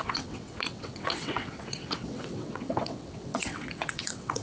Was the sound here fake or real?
fake